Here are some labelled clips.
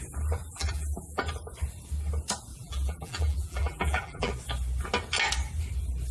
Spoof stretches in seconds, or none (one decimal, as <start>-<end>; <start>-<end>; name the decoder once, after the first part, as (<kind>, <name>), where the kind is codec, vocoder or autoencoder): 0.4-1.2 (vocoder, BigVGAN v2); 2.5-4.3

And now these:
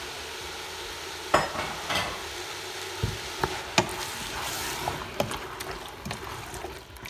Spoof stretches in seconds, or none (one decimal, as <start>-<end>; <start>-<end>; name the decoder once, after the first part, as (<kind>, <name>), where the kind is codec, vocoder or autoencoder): none

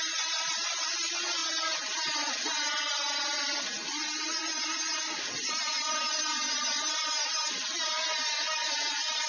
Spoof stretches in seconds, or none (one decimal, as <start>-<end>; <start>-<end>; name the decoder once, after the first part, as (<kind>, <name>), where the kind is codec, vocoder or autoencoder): none

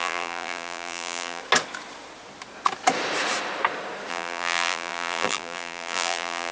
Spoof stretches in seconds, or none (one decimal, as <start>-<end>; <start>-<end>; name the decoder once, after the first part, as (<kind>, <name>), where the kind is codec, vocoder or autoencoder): 0.0-1.4 (vocoder, BigVGAN v2); 4.1-6.5